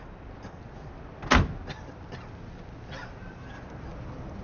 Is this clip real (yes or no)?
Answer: yes